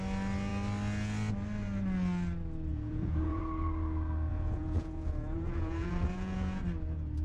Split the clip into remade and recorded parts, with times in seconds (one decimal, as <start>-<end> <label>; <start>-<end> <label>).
0.0-2.7 recorded; 2.7-3.4 remade; 3.4-4.3 recorded; 4.3-6.6 remade; 6.6-7.2 recorded